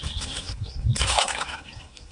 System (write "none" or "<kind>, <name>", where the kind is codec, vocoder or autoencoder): codec, SNAC